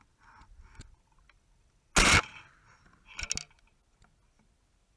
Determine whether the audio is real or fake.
real